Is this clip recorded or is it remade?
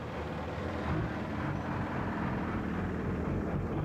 recorded